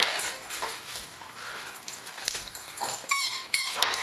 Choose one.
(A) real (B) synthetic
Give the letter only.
B